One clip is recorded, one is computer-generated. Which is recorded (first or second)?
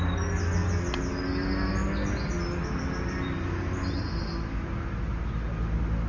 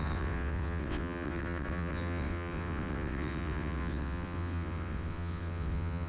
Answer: first